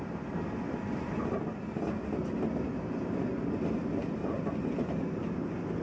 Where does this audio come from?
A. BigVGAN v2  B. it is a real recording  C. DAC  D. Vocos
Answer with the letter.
B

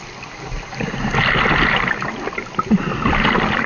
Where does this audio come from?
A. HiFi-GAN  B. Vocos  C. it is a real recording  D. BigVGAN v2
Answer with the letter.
C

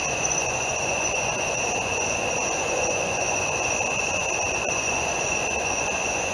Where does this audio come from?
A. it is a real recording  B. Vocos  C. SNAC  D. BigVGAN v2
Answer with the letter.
B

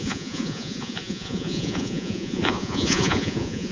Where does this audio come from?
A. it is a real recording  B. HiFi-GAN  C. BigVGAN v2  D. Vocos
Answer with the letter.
D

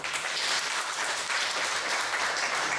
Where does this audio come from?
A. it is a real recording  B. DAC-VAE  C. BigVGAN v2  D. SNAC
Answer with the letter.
C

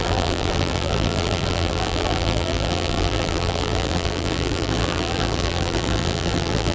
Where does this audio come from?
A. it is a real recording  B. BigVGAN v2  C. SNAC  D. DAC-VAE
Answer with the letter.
B